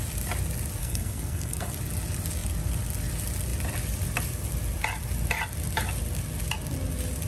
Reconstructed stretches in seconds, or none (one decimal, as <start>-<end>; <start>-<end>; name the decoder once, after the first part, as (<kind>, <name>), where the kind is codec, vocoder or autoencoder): 0.8-1.7 (codec, SNAC)